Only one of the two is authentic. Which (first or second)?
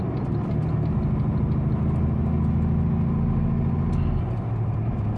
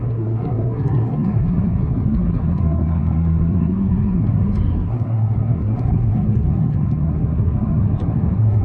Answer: first